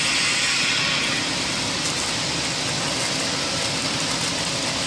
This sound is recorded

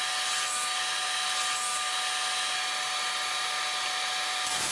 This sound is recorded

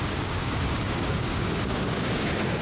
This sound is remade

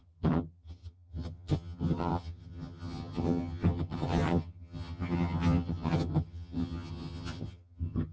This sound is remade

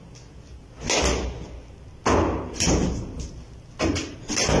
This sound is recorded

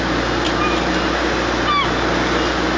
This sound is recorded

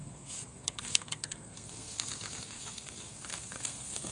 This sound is remade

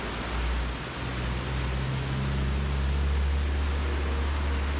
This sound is recorded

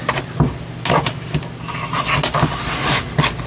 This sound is recorded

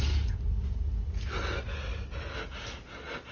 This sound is recorded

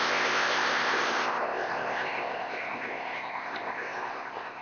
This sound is remade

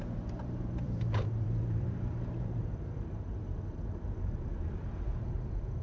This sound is remade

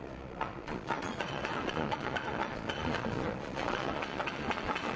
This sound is remade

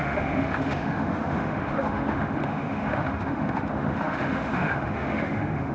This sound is remade